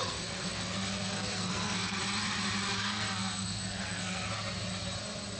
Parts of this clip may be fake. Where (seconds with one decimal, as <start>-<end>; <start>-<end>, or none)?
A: 0.0-2.0; 2.8-4.3